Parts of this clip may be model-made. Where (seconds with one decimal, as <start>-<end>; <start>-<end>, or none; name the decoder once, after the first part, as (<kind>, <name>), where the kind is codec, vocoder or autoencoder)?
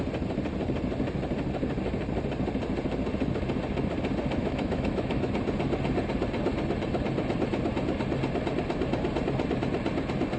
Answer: 4.4-5.3 (autoencoder, DAC-VAE)